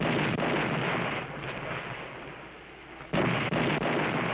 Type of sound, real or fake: real